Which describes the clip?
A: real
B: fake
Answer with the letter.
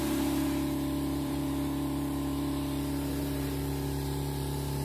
B